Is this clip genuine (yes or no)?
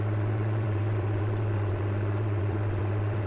no